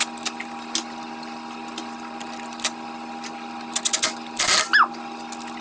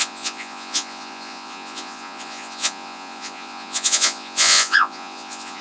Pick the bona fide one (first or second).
first